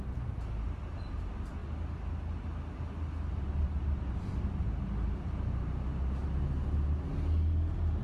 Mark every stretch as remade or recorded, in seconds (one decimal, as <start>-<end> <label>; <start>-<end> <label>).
0.0-8.0 recorded

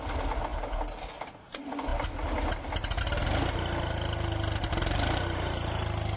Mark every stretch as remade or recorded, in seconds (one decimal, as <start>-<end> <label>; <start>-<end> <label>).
0.0-6.2 recorded

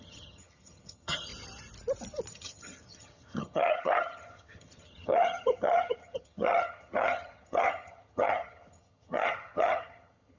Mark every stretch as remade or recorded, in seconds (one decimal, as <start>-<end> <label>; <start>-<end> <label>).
0.0-1.3 remade; 1.3-2.3 recorded; 2.3-10.4 remade

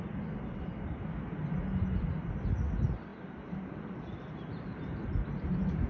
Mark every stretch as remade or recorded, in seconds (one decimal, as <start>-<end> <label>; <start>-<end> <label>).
0.0-5.9 recorded

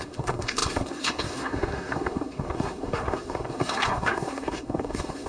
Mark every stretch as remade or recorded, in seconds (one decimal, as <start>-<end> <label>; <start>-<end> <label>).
0.0-5.3 remade

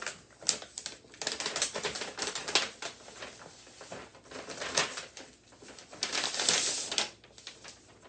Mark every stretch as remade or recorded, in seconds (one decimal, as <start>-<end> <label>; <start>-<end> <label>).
0.0-8.1 recorded